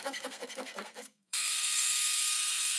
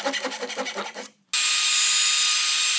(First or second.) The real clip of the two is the second